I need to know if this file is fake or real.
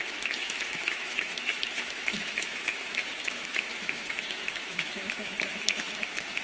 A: fake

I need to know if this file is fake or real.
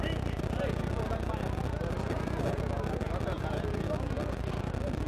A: real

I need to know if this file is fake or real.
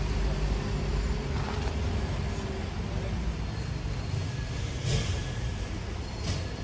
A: real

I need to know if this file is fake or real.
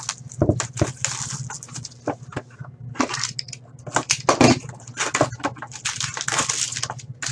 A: real